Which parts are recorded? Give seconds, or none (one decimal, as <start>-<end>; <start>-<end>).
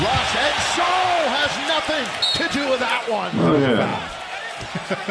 0.0-5.1